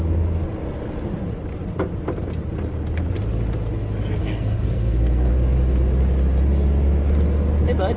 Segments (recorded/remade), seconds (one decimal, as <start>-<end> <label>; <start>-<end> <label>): 0.0-4.2 recorded; 4.2-5.3 remade; 5.3-8.0 recorded